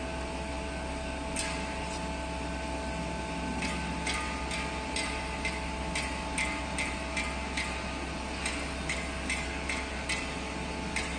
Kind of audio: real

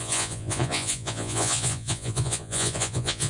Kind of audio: fake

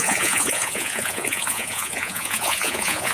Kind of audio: fake